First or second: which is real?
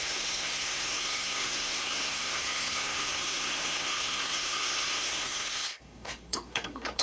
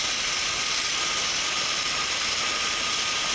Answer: second